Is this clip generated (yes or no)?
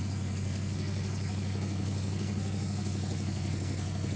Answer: yes